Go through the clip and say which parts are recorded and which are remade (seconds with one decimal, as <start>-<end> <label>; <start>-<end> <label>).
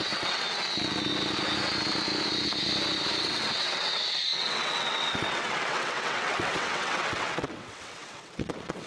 0.0-0.6 remade; 0.6-3.2 recorded; 3.2-8.9 remade